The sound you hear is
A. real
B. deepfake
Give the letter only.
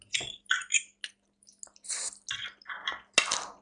A